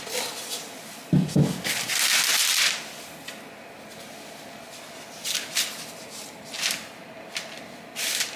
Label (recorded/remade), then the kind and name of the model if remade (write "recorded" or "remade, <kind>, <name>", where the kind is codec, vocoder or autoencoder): recorded